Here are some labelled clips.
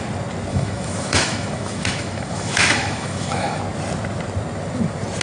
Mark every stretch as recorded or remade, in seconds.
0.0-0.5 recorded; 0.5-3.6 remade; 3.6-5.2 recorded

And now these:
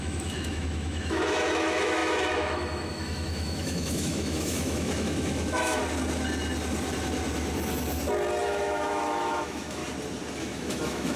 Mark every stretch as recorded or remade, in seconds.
0.0-5.8 remade; 5.8-8.4 recorded; 8.4-9.8 remade; 9.8-10.4 recorded; 10.4-11.2 remade